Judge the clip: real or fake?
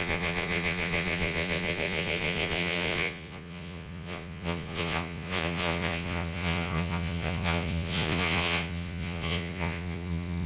fake